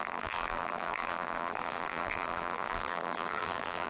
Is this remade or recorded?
remade